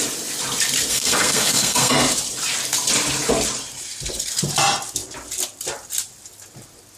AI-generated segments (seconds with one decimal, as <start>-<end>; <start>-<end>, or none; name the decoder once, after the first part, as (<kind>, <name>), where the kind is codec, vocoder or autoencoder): 0.9-1.9 (codec, SNAC)